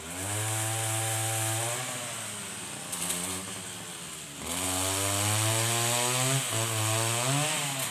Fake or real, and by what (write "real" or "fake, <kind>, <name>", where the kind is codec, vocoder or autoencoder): real